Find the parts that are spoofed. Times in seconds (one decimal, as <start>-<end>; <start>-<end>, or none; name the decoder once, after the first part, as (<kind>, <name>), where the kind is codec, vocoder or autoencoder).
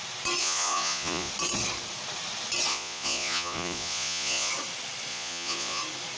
0.4-1.3 (vocoder, Vocos); 2.7-4.5; 5.1-5.8